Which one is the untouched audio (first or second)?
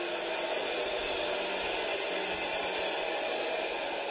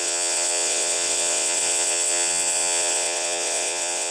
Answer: first